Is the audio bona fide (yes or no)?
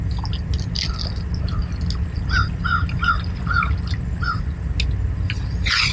yes